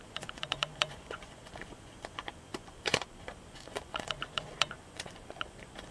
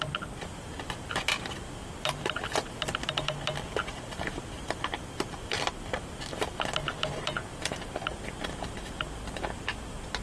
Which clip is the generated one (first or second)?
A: first